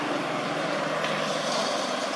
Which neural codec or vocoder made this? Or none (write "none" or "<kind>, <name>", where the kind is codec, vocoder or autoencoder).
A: none